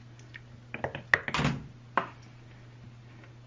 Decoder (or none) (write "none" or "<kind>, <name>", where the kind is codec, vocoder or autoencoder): none